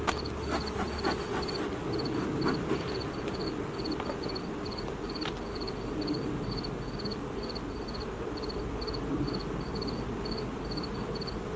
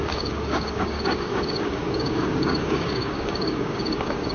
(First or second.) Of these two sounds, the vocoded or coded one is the second